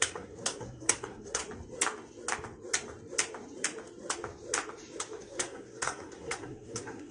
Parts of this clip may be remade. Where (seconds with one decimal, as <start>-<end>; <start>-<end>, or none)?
0.0-1.4; 5.2-7.1